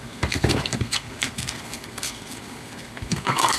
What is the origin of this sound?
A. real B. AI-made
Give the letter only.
B